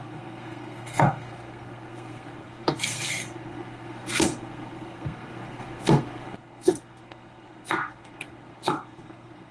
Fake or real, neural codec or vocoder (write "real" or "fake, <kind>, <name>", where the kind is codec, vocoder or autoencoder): fake, codec, SNAC